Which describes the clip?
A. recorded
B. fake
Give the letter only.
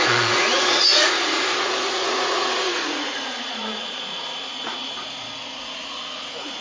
B